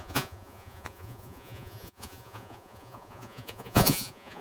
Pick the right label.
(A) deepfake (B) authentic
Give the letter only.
A